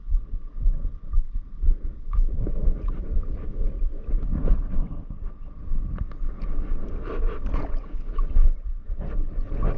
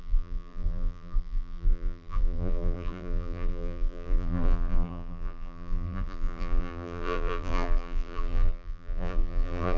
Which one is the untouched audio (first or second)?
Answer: first